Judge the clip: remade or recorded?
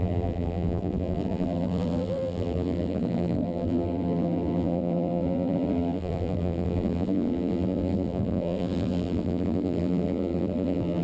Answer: remade